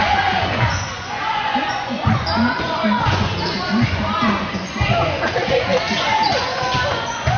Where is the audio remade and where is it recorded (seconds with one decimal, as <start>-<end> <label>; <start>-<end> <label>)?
0.0-7.4 remade